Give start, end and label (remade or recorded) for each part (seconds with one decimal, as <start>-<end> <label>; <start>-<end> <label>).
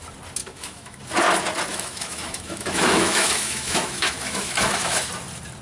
0.0-0.4 recorded; 0.4-1.0 remade; 1.0-1.7 recorded; 1.7-5.1 remade; 5.1-5.6 recorded